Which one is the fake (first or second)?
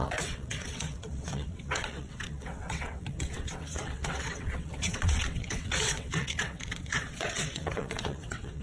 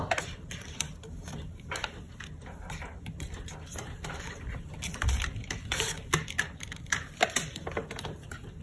first